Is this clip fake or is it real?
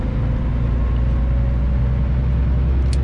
real